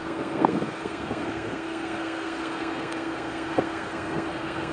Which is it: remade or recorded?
remade